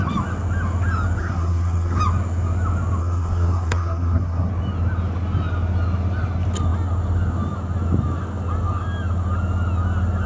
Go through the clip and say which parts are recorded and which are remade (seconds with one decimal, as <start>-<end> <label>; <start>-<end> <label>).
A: 0.0-1.2 recorded; 1.2-2.0 remade; 2.0-3.0 recorded; 3.0-4.5 remade; 4.5-10.3 recorded